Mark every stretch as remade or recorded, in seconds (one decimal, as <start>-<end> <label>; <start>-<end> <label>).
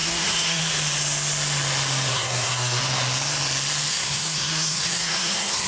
0.0-0.6 remade; 0.6-2.1 recorded; 2.1-2.8 remade; 2.8-3.9 recorded; 3.9-5.7 remade